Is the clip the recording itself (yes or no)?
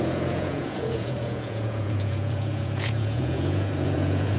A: no